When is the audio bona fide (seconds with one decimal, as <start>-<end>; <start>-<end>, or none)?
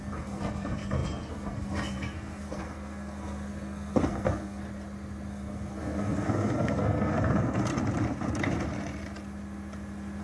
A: 4.6-5.3; 7.7-10.2